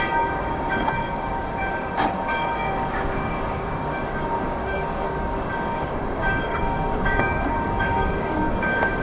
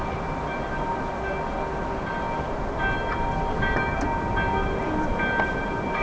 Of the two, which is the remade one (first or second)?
first